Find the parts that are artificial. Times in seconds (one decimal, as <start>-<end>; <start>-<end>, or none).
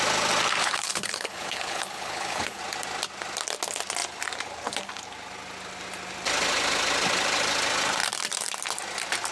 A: 0.6-2.6